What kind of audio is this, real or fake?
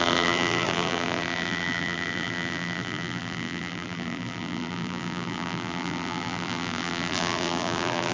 fake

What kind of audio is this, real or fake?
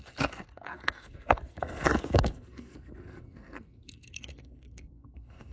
fake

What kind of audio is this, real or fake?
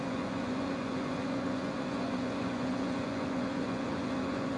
fake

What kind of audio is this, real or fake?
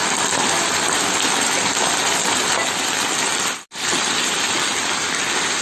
real